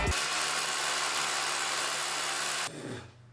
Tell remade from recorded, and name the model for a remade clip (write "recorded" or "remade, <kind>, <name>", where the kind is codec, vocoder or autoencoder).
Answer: recorded